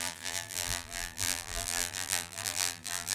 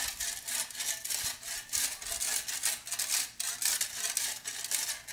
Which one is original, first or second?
second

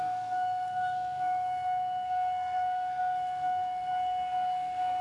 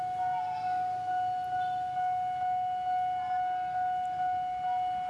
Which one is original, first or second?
second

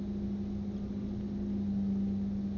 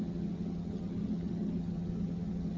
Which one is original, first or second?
first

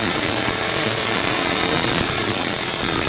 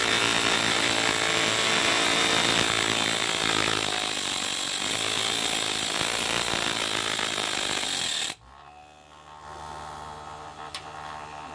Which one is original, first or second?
second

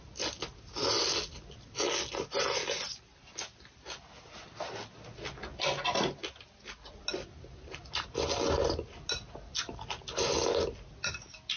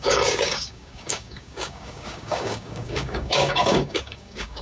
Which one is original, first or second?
first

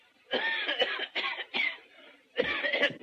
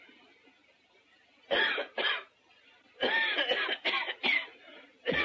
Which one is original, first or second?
second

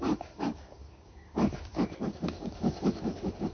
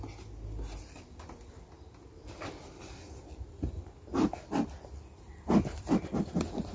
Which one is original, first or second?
second